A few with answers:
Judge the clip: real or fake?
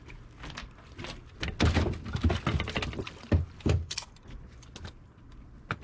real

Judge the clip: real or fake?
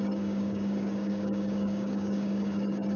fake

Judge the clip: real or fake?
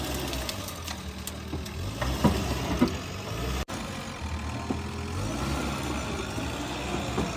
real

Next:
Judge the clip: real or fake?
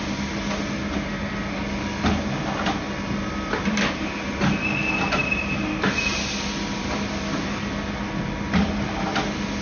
real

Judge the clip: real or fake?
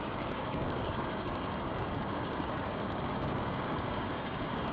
fake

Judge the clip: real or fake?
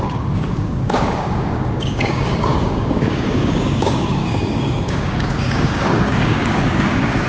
fake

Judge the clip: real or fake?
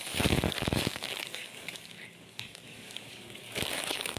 fake